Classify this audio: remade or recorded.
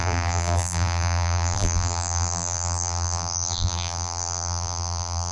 remade